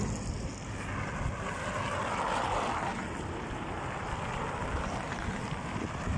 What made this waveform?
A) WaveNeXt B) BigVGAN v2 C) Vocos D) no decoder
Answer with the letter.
D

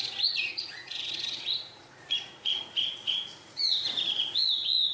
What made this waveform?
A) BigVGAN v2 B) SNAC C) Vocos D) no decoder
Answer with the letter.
C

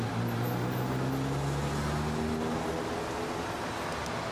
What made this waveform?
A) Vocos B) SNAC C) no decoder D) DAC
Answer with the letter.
C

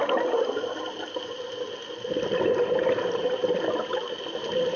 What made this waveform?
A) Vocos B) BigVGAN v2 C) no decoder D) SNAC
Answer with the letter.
C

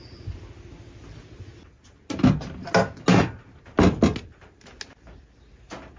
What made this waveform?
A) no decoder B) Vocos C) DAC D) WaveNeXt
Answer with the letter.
A